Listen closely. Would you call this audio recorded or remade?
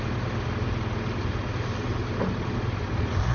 recorded